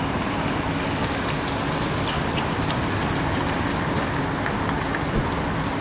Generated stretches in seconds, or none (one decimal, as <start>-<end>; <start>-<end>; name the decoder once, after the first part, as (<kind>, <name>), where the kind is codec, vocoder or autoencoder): 0.0-1.0 (vocoder, BigVGAN v2); 4.5-5.8